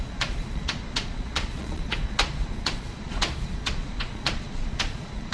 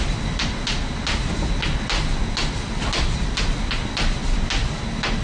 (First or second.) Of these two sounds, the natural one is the second